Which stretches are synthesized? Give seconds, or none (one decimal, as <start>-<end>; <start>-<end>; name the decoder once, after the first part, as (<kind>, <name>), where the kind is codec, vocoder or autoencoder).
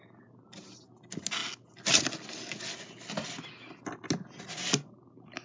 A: none